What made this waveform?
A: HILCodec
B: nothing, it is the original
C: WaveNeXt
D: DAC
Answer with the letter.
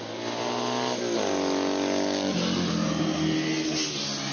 B